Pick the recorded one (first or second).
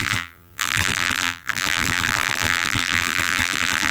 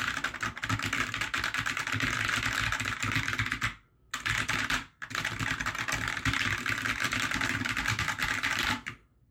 second